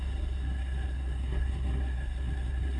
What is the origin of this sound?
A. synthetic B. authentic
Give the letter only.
A